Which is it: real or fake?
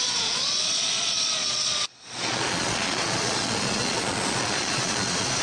fake